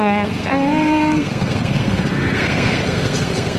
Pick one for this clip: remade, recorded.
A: remade